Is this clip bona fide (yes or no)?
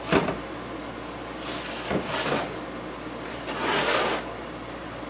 yes